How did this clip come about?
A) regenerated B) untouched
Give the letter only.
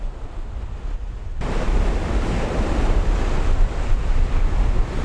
B